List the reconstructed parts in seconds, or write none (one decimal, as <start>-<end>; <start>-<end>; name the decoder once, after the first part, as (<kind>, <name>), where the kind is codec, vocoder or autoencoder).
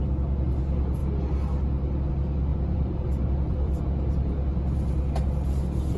2.5-3.8 (vocoder, BigVGAN v2)